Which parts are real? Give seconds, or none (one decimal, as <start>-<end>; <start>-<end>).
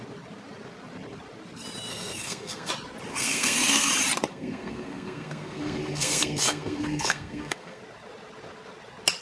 0.0-1.9; 2.7-3.1; 3.9-4.3; 7.8-9.2